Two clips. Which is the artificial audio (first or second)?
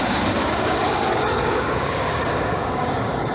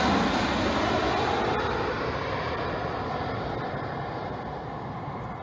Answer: first